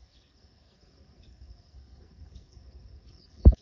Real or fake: fake